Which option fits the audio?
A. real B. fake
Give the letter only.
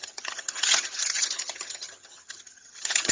B